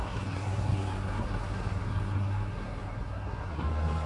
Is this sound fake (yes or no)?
yes